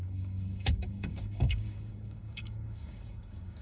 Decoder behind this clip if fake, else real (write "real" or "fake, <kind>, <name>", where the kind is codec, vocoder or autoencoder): fake, codec, DAC